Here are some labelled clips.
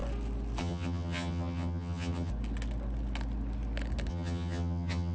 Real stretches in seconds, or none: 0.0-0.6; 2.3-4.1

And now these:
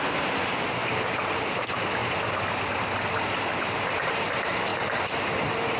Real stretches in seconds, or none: 0.0-2.0; 4.1-4.7; 5.3-5.8

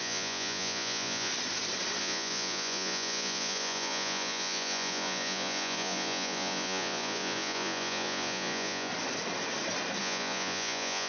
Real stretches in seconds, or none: 1.3-2.0; 8.9-10.0

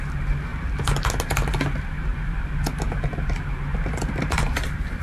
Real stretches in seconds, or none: 0.0-2.1

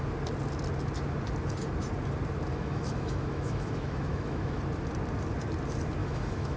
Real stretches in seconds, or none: 0.0-2.5; 4.6-6.0

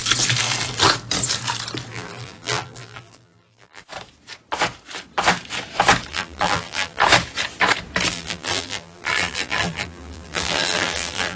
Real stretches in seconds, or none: 0.0-1.9; 3.8-6.1; 7.0-8.1

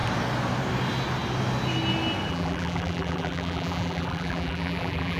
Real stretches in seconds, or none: 0.0-2.3